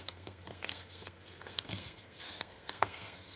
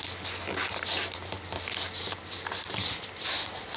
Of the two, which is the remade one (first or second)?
first